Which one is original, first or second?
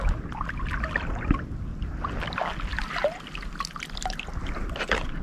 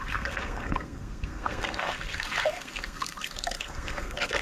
first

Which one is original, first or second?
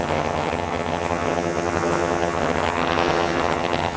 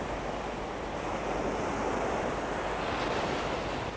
second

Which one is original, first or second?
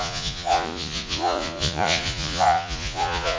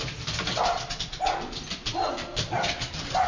second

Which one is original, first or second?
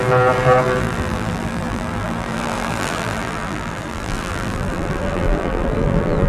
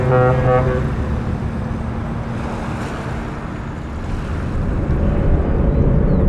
second